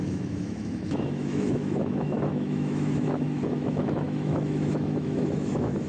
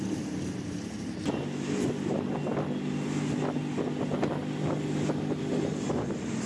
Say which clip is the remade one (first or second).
first